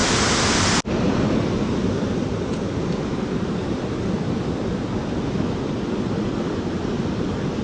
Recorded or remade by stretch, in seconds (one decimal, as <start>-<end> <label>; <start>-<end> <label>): 0.0-1.6 recorded; 1.6-7.6 remade